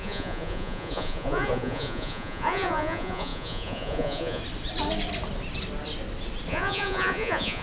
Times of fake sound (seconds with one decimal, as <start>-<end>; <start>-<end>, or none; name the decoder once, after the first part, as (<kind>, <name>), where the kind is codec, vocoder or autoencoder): 0.0-4.4 (vocoder, Vocos); 6.5-7.6